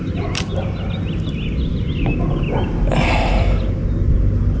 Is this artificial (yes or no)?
no